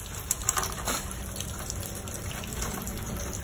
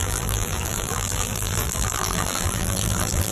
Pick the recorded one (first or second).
first